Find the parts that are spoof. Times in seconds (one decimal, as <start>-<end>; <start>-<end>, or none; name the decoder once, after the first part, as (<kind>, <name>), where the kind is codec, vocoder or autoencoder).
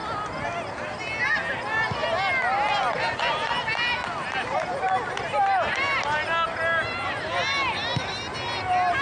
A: none